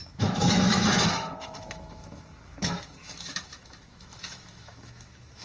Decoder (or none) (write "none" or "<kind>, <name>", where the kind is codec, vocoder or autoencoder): autoencoder, DAC-VAE